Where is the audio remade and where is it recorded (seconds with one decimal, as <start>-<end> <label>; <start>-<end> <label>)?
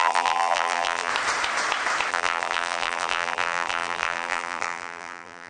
0.0-1.1 remade; 1.1-2.1 recorded; 2.1-5.5 remade